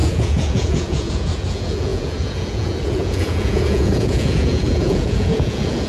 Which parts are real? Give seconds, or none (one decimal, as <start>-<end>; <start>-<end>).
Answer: none